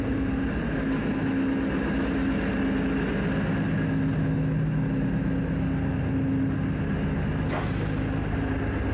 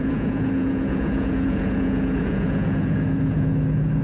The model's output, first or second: second